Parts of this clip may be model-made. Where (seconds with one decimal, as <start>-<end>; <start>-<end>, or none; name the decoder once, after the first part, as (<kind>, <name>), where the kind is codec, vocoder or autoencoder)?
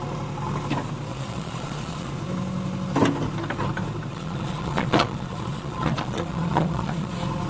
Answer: 1.1-2.1 (vocoder, Vocos); 4.1-7.1